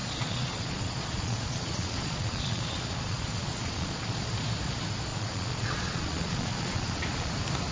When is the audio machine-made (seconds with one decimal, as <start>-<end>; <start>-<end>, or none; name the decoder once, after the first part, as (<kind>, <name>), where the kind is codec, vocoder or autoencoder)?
0.0-4.2 (vocoder, Vocos); 5.1-7.3